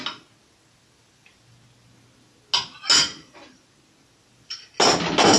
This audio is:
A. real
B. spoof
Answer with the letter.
A